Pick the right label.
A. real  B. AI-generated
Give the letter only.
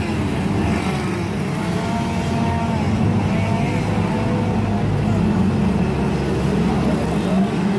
A